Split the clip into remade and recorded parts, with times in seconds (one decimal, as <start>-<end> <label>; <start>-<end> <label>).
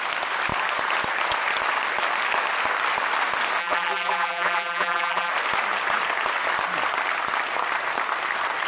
0.0-3.6 recorded; 3.6-5.3 remade; 5.3-8.7 recorded